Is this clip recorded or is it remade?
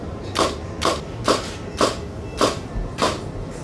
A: recorded